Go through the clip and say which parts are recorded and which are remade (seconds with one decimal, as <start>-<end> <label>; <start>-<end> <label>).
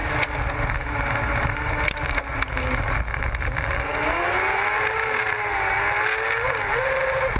0.0-7.4 recorded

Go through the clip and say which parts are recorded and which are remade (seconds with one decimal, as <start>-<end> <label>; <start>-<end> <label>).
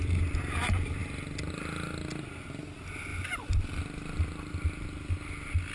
0.0-5.7 recorded